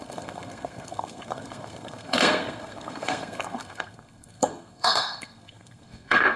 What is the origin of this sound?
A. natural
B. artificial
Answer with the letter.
B